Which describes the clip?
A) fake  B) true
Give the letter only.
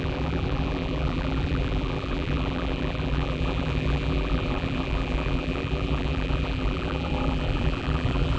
A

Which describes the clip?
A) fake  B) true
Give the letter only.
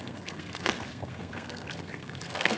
A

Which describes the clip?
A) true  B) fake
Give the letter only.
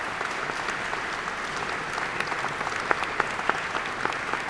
A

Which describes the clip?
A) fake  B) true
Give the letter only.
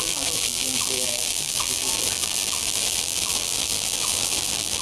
A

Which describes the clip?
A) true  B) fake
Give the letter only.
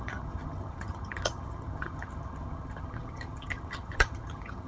B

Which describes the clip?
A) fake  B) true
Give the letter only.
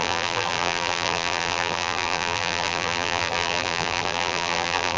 A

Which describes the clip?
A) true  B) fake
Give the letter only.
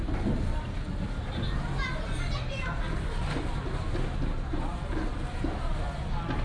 A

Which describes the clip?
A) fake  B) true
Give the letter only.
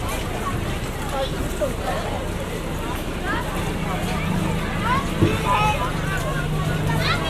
B